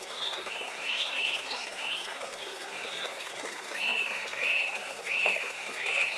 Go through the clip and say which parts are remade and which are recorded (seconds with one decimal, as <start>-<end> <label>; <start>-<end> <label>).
0.0-6.2 remade